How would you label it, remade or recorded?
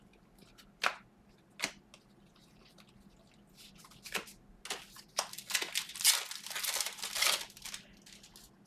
recorded